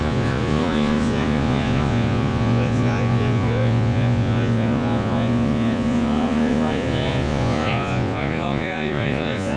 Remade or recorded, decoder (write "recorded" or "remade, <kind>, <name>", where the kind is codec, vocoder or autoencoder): remade, vocoder, Vocos